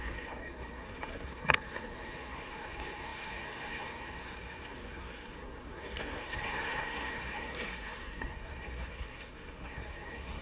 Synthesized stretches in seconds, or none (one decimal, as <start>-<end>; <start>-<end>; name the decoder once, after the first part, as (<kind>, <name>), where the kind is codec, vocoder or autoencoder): 0.0-10.4 (codec, SNAC)

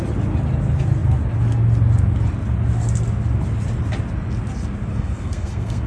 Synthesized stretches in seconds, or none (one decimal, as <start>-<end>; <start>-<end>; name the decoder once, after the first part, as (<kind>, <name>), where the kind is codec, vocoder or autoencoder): 4.9-5.9 (codec, SNAC)

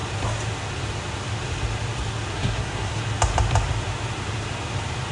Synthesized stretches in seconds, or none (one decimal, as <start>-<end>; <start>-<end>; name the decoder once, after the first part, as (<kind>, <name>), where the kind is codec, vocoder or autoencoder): 2.3-3.0 (codec, SNAC)

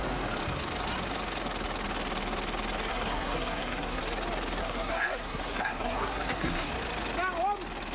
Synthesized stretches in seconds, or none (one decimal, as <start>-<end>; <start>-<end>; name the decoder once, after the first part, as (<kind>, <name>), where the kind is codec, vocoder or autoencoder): 2.9-4.0 (codec, SNAC); 4.6-6.7

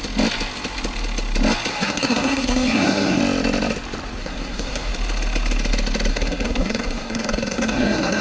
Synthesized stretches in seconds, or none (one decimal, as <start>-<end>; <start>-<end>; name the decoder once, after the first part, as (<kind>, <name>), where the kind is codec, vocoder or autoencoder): 1.7-3.2 (codec, SNAC); 4.2-4.9; 6.1-8.2

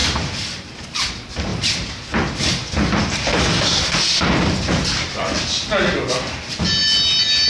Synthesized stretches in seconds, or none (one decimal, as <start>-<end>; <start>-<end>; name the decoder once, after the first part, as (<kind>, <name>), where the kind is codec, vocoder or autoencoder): none

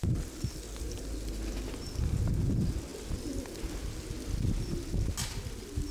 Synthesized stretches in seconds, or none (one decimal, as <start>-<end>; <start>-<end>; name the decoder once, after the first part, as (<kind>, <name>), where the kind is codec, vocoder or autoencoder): none